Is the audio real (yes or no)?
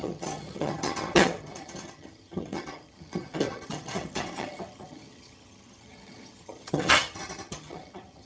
no